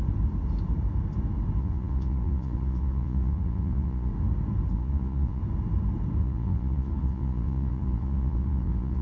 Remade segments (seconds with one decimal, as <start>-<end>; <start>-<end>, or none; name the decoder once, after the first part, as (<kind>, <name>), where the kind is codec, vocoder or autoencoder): 1.6-4.1 (vocoder, Vocos); 4.7-5.4; 6.2-9.0